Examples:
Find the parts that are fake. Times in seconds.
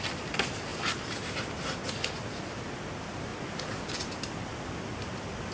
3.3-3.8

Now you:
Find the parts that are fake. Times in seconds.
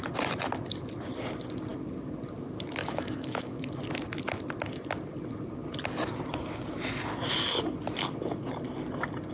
2.8-3.7